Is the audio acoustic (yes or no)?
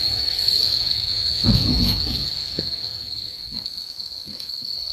no